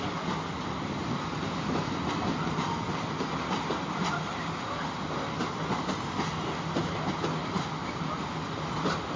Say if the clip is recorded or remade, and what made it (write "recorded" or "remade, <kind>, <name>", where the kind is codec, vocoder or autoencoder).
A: recorded